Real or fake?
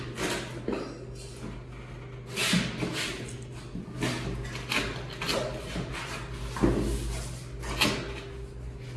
real